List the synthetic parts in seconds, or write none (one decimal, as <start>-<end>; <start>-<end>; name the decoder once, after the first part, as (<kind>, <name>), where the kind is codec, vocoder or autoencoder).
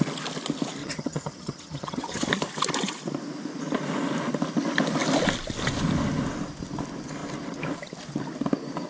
0.8-2.3 (vocoder, HiFi-GAN)